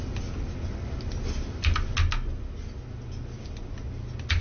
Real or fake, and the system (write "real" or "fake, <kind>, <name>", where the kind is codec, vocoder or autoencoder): real